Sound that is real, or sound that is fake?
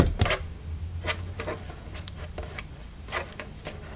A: fake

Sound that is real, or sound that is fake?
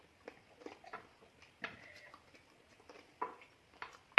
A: real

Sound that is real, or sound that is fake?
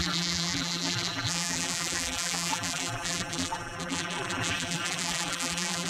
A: fake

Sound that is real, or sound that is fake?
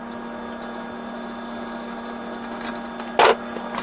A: real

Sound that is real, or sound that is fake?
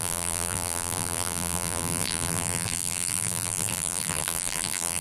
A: fake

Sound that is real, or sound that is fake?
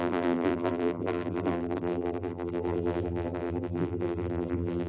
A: fake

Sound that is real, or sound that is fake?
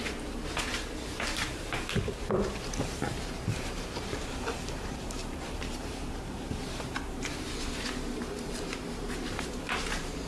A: fake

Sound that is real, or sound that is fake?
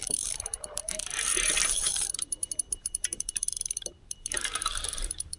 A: fake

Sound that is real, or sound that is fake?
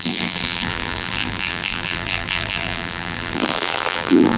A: fake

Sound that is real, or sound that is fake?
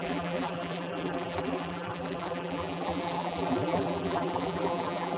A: fake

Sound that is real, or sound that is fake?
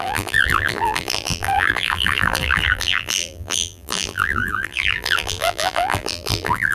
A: fake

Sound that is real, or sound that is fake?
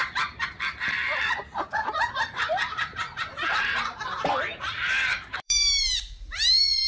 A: fake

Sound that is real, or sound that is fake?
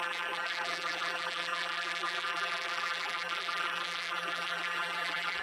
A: fake